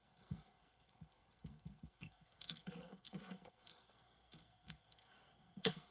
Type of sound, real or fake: fake